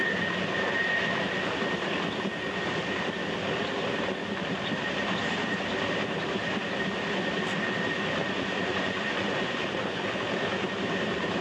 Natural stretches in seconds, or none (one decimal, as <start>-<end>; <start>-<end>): 0.0-8.2; 10.2-11.4